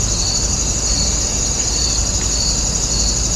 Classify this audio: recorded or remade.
recorded